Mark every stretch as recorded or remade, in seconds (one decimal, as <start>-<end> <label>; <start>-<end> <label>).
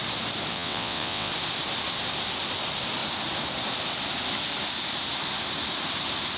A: 0.0-0.5 recorded; 0.5-1.3 remade; 1.3-6.4 recorded